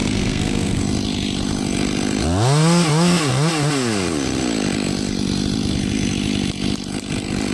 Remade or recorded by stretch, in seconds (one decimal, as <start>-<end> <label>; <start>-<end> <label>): 0.0-0.8 remade; 0.8-7.5 recorded